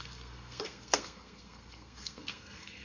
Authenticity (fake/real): fake